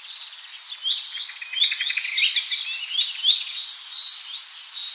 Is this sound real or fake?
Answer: real